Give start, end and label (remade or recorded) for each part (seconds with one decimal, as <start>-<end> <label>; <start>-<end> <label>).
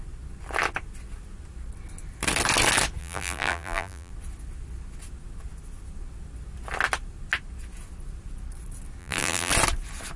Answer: 0.0-3.0 recorded; 3.0-4.1 remade; 4.1-9.0 recorded; 9.0-9.5 remade; 9.5-10.2 recorded